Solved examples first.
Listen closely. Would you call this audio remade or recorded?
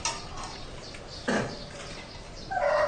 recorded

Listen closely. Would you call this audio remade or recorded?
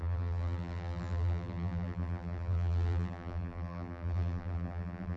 remade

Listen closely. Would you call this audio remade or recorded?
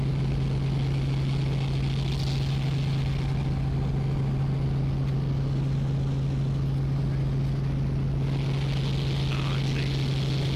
recorded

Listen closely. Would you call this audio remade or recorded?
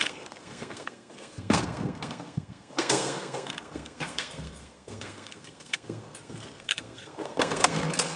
remade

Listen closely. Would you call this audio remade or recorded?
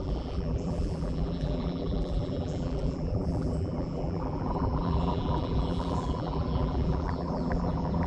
remade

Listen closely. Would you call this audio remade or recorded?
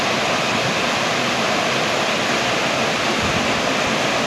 recorded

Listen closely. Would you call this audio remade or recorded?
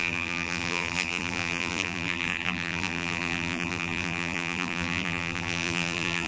remade